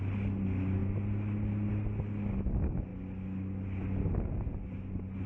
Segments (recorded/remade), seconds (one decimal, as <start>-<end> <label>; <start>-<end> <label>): 0.0-5.3 recorded